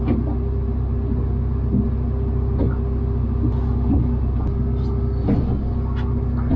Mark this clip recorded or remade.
recorded